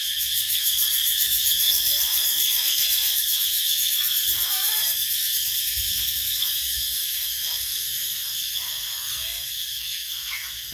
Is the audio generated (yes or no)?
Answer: yes